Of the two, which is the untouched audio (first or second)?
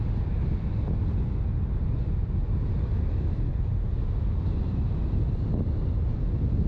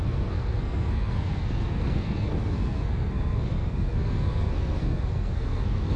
first